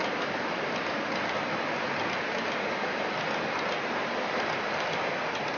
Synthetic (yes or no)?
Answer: no